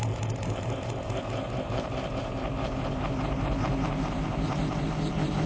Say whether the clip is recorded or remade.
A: remade